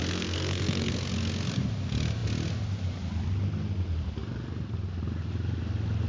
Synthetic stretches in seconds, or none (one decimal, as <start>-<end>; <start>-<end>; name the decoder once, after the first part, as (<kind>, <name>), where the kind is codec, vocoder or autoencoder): 0.0-0.9 (codec, SNAC)